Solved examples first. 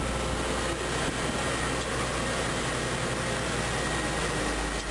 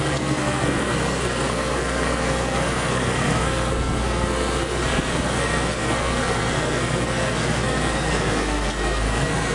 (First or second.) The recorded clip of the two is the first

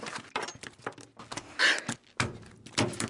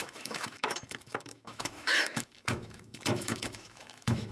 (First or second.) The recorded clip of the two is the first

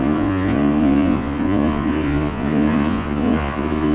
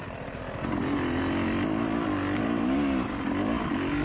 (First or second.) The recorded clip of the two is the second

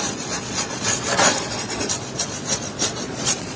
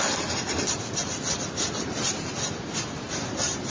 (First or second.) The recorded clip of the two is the second